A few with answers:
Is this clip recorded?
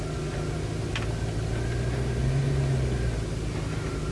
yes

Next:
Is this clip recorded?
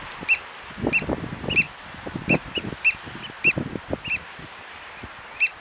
yes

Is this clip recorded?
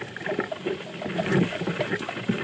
yes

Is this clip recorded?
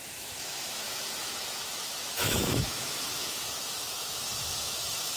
no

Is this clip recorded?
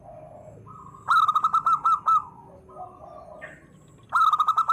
yes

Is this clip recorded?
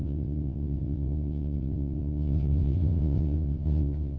no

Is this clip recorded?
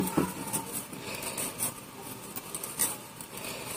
yes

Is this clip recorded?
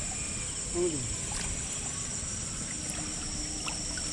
yes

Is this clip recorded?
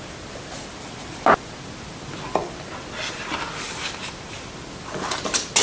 yes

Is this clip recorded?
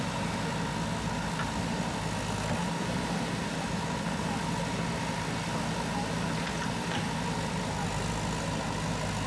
yes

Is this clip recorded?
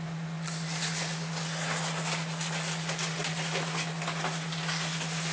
yes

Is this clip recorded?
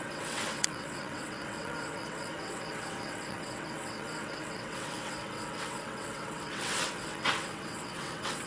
no